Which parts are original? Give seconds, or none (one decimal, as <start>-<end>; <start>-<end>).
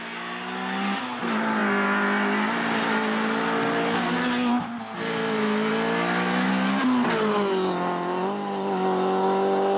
0.0-9.8